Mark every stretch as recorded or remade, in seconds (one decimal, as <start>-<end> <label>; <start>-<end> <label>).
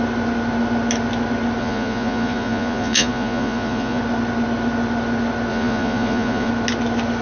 0.0-1.6 recorded; 1.6-4.0 remade; 4.0-5.5 recorded; 5.5-6.5 remade; 6.5-7.2 recorded